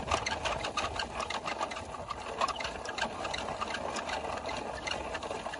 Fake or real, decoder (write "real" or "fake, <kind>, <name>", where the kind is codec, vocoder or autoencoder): real